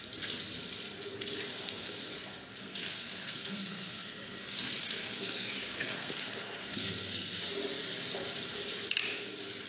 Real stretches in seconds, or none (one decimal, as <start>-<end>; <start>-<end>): 0.0-1.5; 2.1-2.6; 7.5-9.7